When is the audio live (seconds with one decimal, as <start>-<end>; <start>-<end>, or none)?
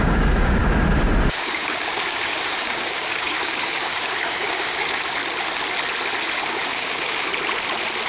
0.6-1.3; 5.2-6.4; 7.3-8.1